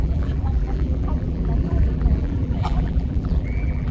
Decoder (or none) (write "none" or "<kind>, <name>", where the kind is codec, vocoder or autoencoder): vocoder, BigVGAN v2